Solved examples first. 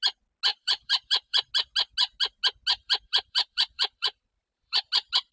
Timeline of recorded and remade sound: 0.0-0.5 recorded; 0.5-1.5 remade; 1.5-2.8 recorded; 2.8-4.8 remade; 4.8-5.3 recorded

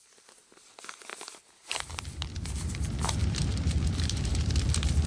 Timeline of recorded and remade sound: 0.0-1.1 recorded; 1.1-2.0 remade; 2.0-3.2 recorded; 3.2-4.5 remade; 4.5-5.1 recorded